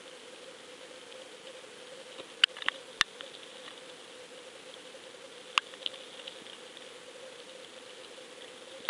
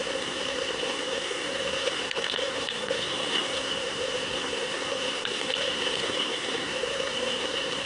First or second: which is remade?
second